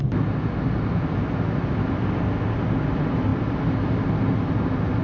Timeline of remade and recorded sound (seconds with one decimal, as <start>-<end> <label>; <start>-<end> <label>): 0.0-5.0 recorded